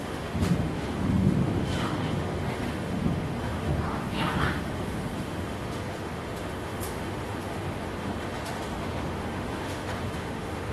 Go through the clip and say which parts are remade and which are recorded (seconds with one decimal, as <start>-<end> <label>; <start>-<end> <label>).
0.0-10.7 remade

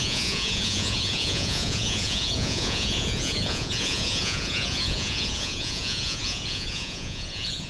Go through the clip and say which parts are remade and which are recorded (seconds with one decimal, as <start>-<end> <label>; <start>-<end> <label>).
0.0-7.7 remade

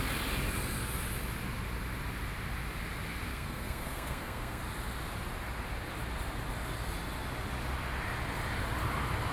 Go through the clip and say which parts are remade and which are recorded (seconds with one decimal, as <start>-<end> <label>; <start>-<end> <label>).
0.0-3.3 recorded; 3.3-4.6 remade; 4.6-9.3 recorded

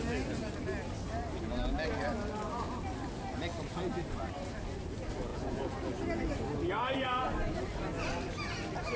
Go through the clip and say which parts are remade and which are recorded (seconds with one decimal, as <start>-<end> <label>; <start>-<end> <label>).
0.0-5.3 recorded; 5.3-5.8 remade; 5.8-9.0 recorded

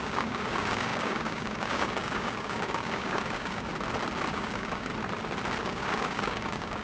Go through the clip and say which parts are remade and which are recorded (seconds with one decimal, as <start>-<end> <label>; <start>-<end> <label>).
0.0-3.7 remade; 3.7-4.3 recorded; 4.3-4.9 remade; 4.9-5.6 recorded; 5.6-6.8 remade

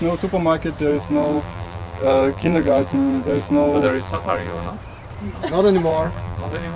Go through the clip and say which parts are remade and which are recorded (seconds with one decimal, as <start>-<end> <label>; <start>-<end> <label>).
0.0-0.9 recorded; 0.9-4.7 remade; 4.7-5.9 recorded; 5.9-6.8 remade